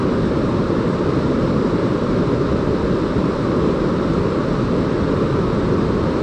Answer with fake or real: fake